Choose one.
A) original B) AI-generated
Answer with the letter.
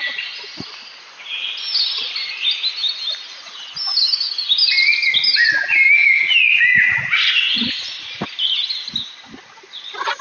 A